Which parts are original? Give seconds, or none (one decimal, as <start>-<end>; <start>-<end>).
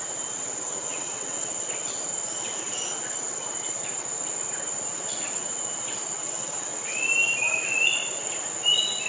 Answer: 0.0-0.9; 1.5-6.2; 6.8-9.1